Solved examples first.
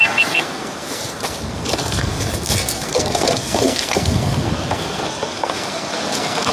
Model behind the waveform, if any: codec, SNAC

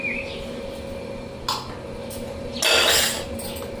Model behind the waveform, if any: none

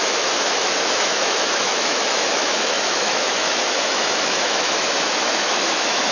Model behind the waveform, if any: autoencoder, DAC-VAE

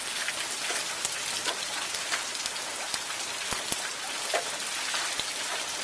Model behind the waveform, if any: none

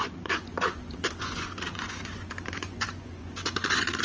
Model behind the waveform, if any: vocoder, Vocos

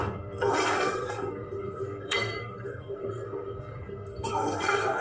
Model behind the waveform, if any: codec, SNAC